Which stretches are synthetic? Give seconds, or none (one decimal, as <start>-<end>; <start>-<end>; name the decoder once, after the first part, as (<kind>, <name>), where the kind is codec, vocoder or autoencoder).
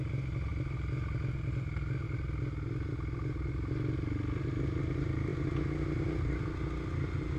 none